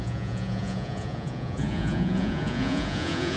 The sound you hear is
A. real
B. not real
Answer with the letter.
B